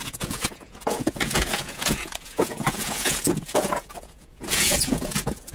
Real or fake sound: fake